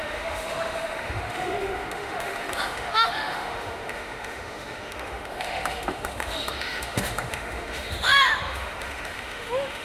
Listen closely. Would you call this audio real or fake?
fake